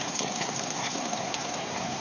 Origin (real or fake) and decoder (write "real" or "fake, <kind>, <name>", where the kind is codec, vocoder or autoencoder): fake, codec, SNAC